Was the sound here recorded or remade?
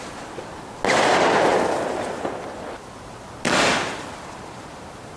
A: recorded